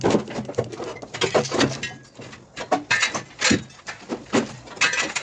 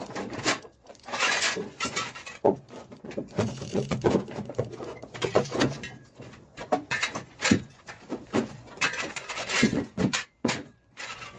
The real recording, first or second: first